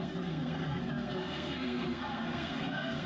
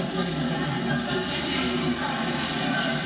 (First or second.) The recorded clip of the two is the second